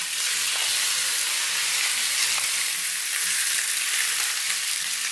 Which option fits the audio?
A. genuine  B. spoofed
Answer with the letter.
A